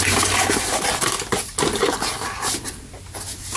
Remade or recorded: recorded